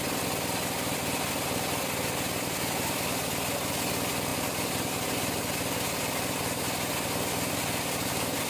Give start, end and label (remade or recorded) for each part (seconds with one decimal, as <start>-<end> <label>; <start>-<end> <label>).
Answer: 0.0-8.5 recorded